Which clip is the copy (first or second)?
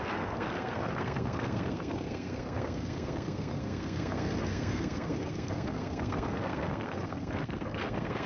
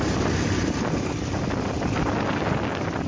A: first